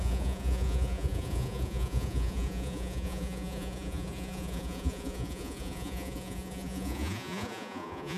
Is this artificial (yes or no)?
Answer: yes